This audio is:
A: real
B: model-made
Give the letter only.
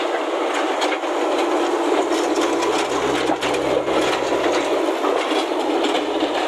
A